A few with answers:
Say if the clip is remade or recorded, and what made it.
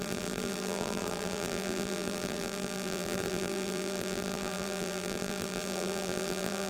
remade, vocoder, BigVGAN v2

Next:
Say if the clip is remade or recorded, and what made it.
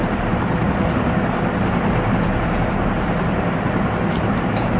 recorded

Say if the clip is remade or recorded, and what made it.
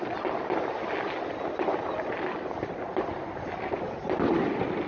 recorded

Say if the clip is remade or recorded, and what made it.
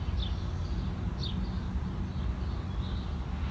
recorded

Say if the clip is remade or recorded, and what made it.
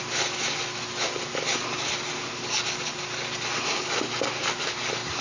recorded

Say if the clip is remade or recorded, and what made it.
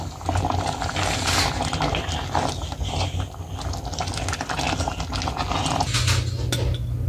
recorded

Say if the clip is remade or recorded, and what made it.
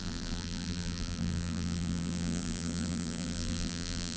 remade, vocoder, BigVGAN v2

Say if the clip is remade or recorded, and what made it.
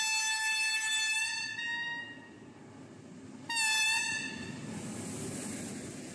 recorded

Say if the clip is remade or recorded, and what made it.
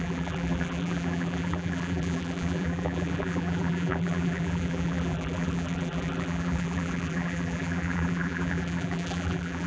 remade, vocoder, BigVGAN v2